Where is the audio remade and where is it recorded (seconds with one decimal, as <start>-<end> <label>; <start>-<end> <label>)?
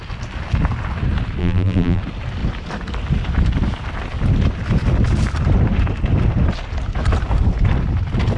0.0-1.4 recorded; 1.4-2.0 remade; 2.0-8.4 recorded